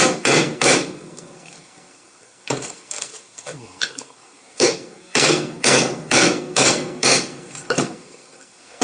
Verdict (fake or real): fake